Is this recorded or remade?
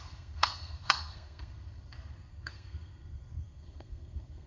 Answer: remade